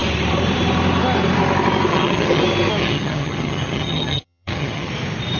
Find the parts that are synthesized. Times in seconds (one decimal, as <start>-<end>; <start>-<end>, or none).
1.9-2.4; 2.8-4.9